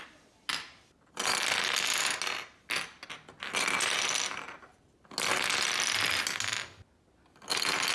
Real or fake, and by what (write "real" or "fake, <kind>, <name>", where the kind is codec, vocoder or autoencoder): real